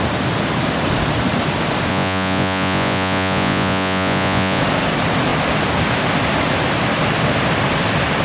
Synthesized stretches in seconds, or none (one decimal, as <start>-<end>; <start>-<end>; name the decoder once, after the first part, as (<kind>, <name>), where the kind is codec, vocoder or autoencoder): 1.9-4.6 (vocoder, Vocos)